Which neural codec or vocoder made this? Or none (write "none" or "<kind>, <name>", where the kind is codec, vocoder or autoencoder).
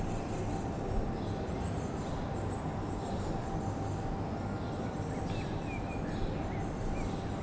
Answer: none